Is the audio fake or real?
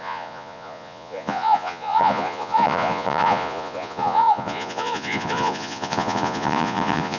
fake